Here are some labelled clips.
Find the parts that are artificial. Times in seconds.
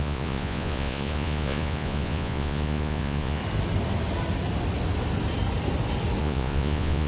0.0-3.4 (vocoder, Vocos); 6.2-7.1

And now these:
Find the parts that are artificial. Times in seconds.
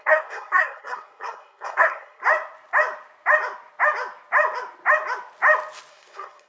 0.0-2.2 (codec, SNAC); 5.9-6.5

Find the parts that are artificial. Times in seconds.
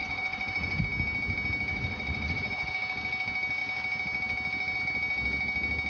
0.0-0.8 (vocoder, Vocos); 1.7-2.7